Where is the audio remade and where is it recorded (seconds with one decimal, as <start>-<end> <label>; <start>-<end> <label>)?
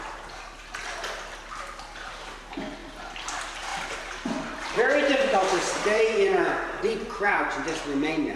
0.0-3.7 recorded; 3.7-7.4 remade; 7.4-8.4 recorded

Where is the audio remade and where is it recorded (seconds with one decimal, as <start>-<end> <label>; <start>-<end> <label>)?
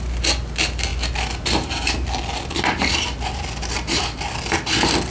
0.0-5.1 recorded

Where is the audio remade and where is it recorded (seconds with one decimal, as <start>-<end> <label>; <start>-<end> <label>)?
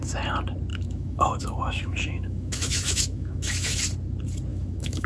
0.0-0.7 recorded; 0.7-3.8 remade; 3.8-4.5 recorded; 4.5-5.1 remade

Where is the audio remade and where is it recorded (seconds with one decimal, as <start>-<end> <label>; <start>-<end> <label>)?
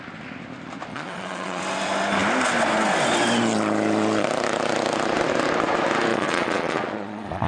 0.0-0.9 recorded; 0.9-1.6 remade; 1.6-6.1 recorded; 6.1-7.5 remade